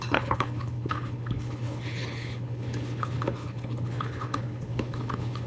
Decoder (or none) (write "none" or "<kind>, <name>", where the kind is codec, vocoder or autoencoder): codec, HILCodec